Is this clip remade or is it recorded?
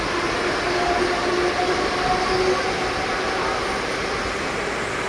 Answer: recorded